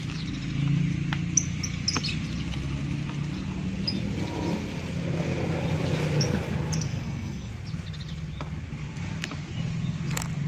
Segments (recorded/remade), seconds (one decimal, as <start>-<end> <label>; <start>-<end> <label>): 0.0-6.9 recorded; 6.9-7.5 remade; 7.5-10.5 recorded